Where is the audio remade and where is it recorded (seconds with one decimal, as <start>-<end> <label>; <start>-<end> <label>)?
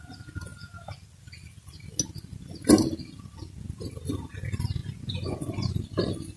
0.0-4.8 recorded; 4.8-5.7 remade; 5.7-6.4 recorded